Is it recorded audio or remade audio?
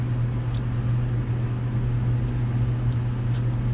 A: recorded